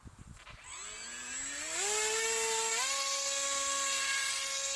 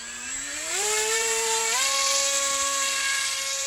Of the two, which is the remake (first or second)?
second